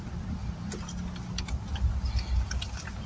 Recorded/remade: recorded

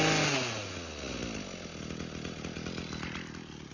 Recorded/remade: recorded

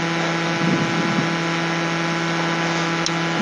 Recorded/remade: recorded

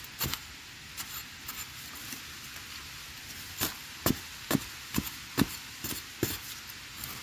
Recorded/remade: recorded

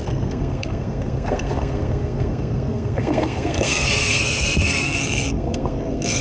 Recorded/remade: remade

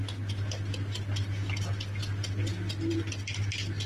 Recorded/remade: recorded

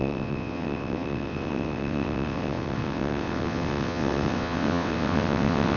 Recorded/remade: remade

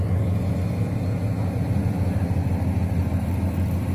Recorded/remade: recorded